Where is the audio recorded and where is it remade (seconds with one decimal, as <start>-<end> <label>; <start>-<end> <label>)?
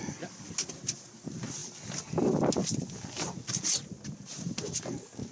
0.0-5.3 recorded